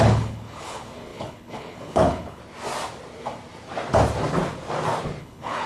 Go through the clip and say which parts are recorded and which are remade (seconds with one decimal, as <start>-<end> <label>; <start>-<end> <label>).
0.0-2.4 remade; 2.4-5.2 recorded; 5.2-5.7 remade